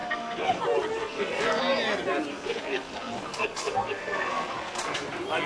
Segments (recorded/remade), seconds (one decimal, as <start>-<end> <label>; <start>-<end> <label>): 0.0-0.6 remade; 0.6-1.0 recorded; 1.0-1.6 remade; 1.6-2.3 recorded; 2.3-4.9 remade; 4.9-5.5 recorded